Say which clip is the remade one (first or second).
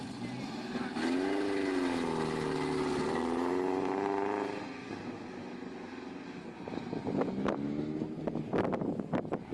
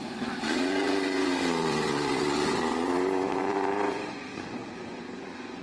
second